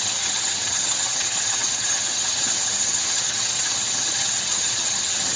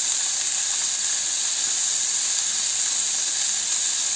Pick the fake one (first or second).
first